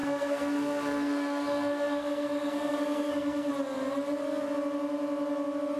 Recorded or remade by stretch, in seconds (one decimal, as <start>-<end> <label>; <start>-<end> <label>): 0.0-3.5 remade; 3.5-5.8 recorded